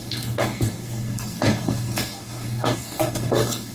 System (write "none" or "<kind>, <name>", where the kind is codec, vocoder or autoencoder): codec, SNAC